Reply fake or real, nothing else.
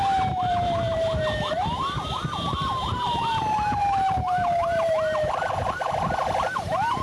fake